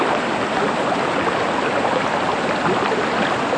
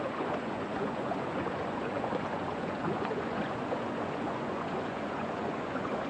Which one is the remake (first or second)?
second